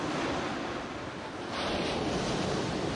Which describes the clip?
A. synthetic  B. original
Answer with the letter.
B